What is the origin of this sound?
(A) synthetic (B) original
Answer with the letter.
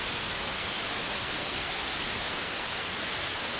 A